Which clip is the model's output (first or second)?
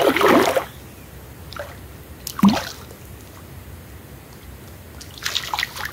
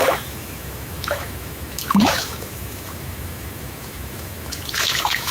second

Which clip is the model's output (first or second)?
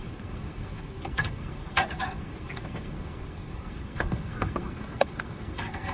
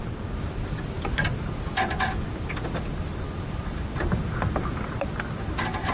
first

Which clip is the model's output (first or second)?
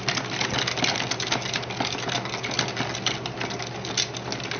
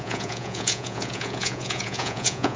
second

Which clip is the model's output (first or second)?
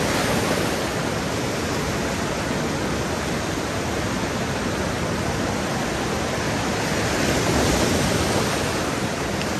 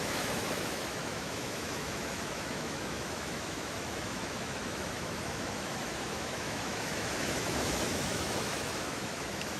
second